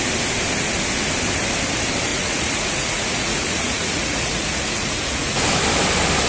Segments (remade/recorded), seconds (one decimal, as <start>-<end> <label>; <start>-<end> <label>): 0.0-2.1 recorded; 2.1-5.4 remade; 5.4-6.3 recorded